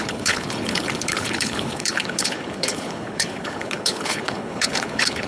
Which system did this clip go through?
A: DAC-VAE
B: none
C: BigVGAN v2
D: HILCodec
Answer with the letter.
D